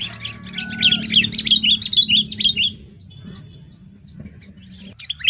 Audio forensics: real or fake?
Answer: real